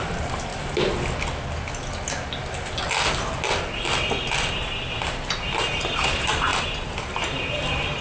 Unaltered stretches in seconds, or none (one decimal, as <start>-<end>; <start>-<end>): 0.5-4.9